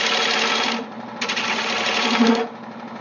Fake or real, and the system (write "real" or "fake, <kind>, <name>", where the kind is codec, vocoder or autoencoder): real